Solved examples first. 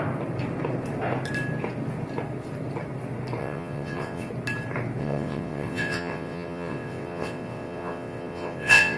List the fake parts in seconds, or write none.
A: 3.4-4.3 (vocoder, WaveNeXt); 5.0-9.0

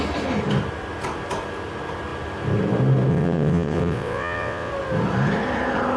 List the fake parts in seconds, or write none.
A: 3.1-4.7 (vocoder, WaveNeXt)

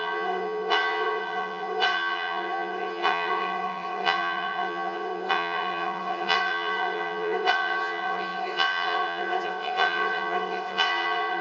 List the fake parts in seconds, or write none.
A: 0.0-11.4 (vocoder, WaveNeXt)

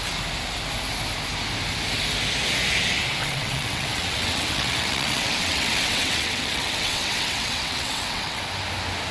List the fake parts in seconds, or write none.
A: 3.2-8.4 (vocoder, WaveNeXt)

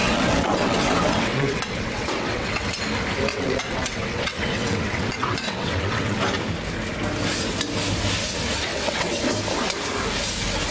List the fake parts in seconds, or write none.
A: 0.0-2.8 (vocoder, WaveNeXt); 3.3-6.2; 8.7-9.2

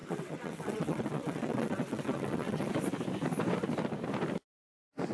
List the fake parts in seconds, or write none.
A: 0.0-2.7 (vocoder, WaveNeXt)